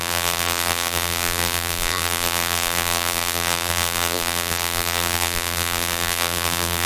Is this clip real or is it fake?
fake